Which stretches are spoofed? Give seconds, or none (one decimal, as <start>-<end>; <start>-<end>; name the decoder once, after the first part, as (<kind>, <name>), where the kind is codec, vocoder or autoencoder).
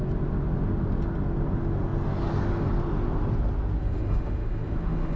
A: 3.8-5.2 (autoencoder, DAC-VAE)